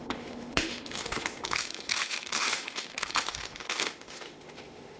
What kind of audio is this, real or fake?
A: fake